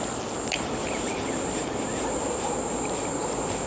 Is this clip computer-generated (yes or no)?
no